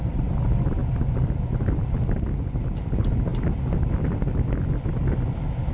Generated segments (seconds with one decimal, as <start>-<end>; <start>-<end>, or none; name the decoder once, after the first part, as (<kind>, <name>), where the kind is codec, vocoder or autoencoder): none